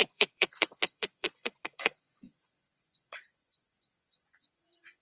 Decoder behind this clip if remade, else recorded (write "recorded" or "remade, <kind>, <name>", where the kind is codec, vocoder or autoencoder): remade, vocoder, Vocos